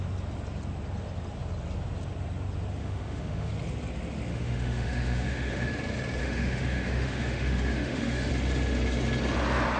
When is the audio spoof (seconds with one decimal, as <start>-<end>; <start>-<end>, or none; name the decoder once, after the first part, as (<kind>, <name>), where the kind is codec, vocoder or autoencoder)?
2.8-3.5 (autoencoder, DAC-VAE); 4.3-5.7; 6.2-8.3